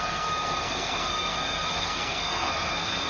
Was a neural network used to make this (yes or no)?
yes